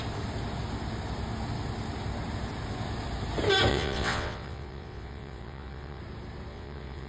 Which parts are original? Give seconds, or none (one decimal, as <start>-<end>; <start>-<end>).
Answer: 0.0-3.7; 6.0-6.5